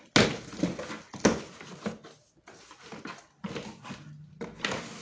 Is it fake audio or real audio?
real